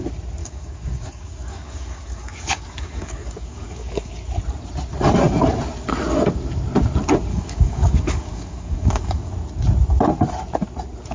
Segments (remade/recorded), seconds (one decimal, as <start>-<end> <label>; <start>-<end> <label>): 0.0-0.4 recorded; 0.4-4.1 remade; 4.1-7.3 recorded; 7.3-9.3 remade; 9.3-11.1 recorded